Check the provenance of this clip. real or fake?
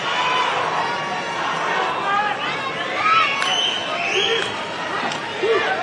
real